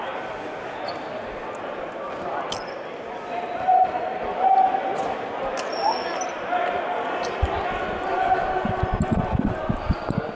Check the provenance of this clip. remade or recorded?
recorded